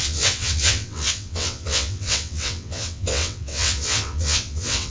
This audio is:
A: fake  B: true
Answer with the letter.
A